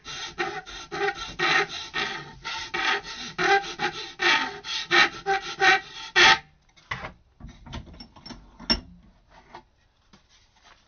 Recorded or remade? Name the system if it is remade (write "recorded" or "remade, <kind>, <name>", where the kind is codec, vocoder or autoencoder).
recorded